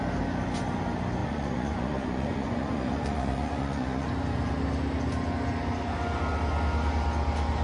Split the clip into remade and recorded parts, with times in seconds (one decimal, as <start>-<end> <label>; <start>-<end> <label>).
0.0-1.2 recorded; 1.2-4.1 remade; 4.1-7.6 recorded